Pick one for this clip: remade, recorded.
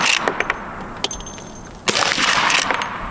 recorded